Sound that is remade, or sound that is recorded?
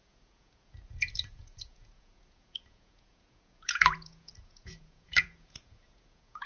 remade